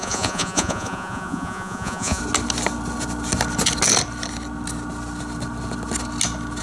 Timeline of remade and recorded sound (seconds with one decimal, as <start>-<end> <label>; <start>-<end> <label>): 0.0-2.2 remade; 2.2-6.6 recorded